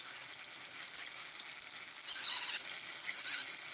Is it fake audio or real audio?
real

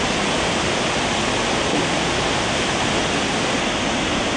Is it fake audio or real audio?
real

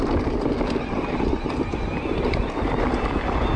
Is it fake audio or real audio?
real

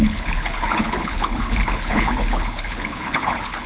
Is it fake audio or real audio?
fake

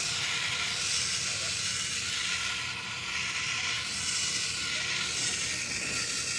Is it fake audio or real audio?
real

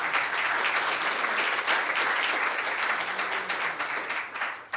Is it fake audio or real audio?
real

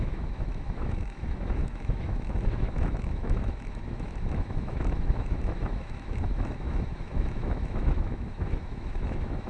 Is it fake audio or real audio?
fake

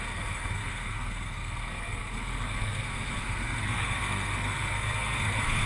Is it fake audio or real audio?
fake